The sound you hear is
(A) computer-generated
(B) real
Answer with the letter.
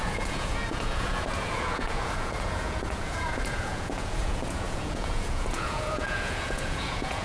A